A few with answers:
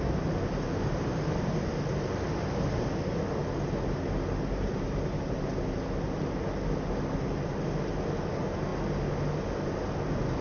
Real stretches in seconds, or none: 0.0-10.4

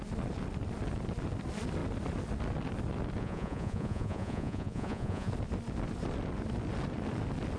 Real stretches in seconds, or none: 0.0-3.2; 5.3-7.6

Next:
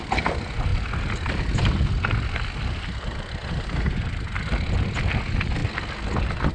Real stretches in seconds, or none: 0.0-6.5

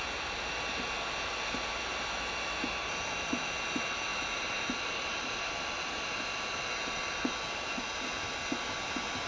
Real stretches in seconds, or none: 0.0-9.3

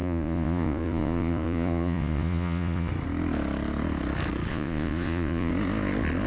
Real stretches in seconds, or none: 2.9-4.5; 5.5-6.3

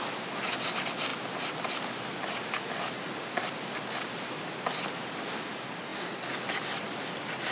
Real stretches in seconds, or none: 0.0-7.5

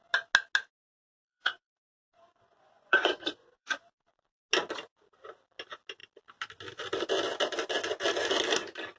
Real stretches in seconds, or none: 0.0-1.2; 4.4-9.0